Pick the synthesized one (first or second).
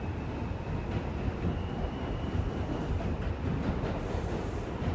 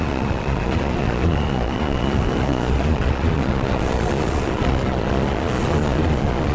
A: second